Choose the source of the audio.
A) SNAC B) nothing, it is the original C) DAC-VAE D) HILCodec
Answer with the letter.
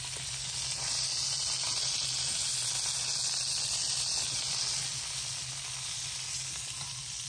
B